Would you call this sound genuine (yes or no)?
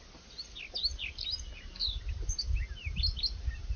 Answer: yes